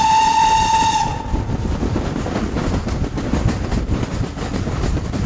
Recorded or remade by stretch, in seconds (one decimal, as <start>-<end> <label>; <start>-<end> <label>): 0.0-5.3 recorded